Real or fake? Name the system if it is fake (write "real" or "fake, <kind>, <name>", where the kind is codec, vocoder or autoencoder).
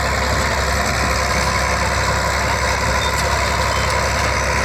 real